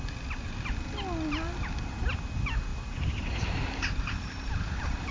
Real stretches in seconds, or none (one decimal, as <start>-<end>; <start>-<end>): 0.0-2.7